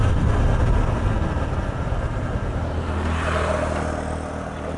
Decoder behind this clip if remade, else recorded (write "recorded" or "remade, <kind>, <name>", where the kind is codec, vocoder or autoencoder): recorded